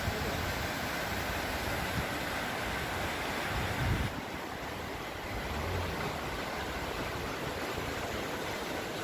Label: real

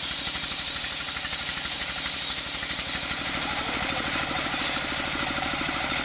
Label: fake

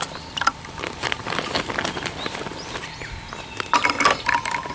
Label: fake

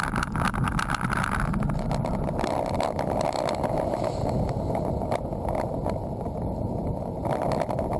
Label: real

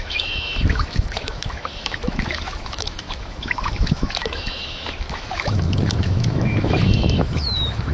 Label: fake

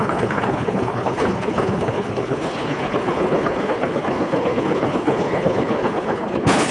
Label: fake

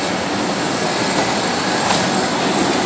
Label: real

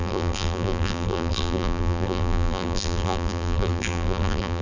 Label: fake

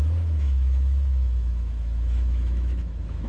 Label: fake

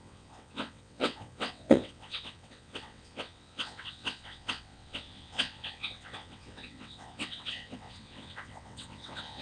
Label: fake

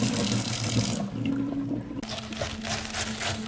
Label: real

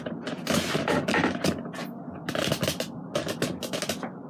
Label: real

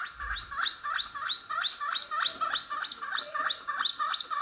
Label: real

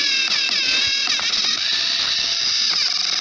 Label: real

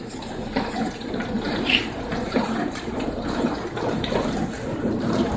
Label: fake